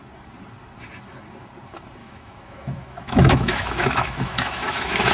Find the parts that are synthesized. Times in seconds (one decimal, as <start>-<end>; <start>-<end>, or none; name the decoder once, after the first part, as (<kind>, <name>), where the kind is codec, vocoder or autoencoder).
2.0-5.1 (autoencoder, DAC-VAE)